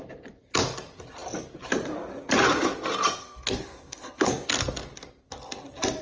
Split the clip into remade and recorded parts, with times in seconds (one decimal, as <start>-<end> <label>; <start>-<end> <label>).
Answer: 0.0-3.2 recorded; 3.2-4.3 remade; 4.3-6.0 recorded